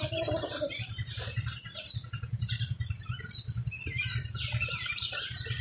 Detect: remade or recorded remade